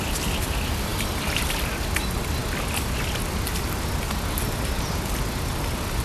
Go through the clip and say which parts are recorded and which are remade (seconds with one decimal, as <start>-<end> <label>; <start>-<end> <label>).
0.0-6.0 recorded